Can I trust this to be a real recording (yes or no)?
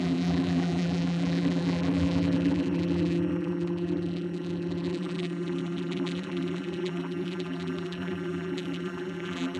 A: no